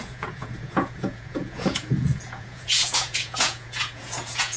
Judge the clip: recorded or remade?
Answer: remade